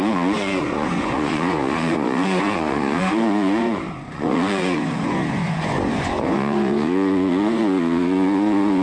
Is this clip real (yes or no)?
no